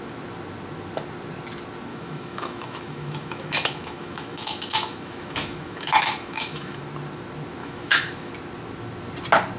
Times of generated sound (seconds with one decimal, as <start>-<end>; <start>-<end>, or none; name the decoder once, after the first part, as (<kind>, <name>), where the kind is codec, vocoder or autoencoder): 1.9-6.8 (autoencoder, DAC-VAE); 7.6-8.3